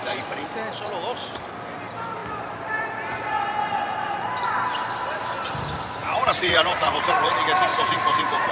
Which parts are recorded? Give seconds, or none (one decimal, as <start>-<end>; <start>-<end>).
0.5-6.0; 7.3-7.7